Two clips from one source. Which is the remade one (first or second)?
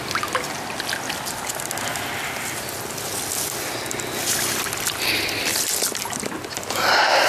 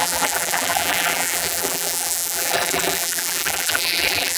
second